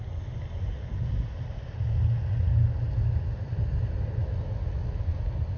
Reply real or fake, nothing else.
real